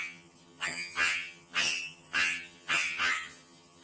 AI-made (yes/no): yes